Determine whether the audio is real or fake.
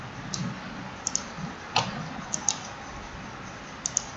real